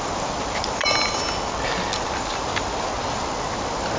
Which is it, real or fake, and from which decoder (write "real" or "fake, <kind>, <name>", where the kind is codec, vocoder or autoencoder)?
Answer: real